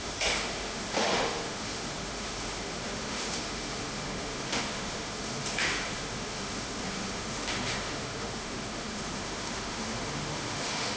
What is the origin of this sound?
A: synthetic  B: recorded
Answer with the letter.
A